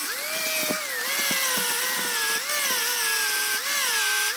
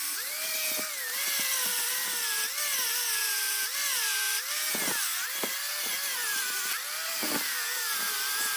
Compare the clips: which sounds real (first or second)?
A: first